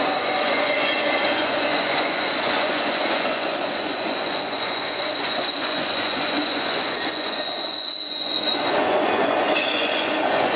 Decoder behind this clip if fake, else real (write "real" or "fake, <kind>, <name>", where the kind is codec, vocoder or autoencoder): fake, vocoder, Vocos